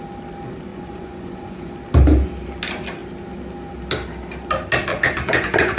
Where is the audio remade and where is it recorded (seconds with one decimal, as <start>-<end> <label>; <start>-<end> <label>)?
0.0-0.7 recorded; 0.7-1.7 remade; 1.7-4.9 recorded; 4.9-5.8 remade